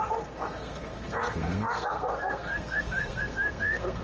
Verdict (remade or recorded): remade